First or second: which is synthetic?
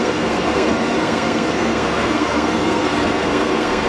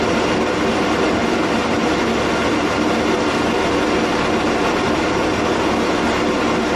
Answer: first